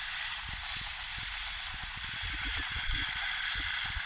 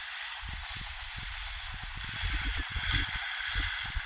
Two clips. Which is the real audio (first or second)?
second